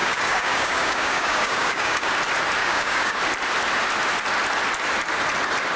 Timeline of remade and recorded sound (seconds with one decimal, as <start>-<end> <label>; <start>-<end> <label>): 0.0-2.1 remade; 2.1-2.6 recorded; 2.6-3.2 remade; 3.2-5.8 recorded